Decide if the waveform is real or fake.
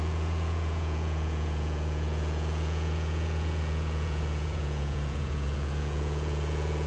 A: fake